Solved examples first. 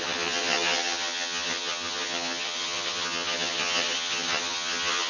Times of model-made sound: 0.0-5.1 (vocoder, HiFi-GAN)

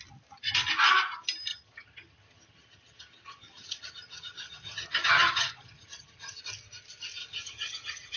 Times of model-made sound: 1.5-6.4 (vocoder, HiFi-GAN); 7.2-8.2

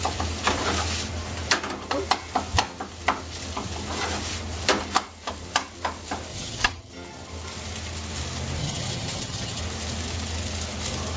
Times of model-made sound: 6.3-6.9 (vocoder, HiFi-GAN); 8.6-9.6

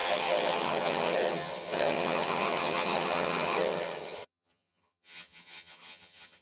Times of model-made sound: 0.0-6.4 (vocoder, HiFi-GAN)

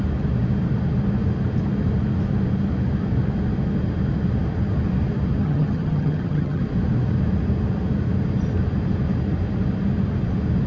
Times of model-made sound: 5.4-6.6 (vocoder, HiFi-GAN)

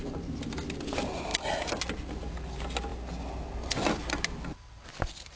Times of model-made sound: none

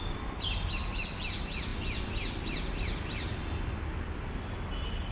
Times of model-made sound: none

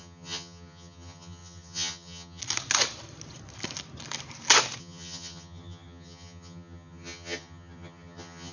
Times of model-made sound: 0.0-2.4 (vocoder, HiFi-GAN); 4.8-8.5